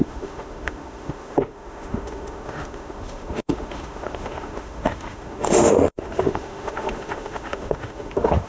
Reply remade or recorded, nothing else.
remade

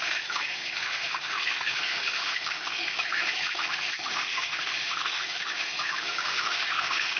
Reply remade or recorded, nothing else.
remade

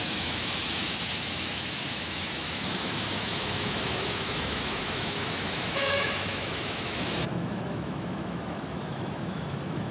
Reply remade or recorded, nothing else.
remade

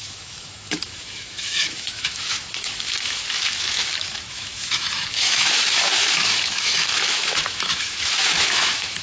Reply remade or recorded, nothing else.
remade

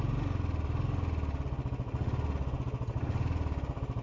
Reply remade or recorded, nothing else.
recorded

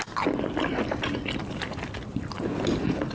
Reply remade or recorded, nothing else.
recorded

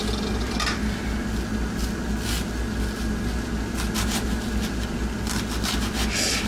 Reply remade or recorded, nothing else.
recorded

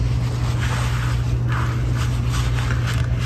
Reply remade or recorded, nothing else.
recorded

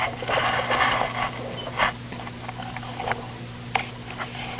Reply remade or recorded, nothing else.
recorded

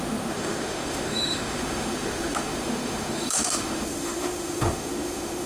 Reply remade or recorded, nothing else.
remade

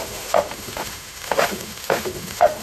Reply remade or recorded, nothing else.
remade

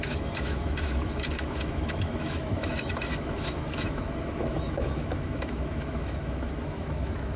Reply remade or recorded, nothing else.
remade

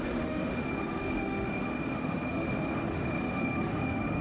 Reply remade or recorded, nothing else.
remade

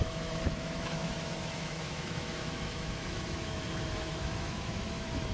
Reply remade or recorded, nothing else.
remade